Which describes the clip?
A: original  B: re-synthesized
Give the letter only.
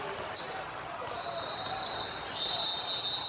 A